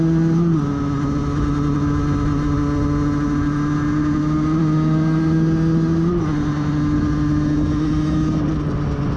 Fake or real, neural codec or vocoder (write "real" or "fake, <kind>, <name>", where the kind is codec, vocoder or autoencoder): real